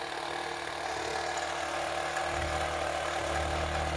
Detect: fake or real real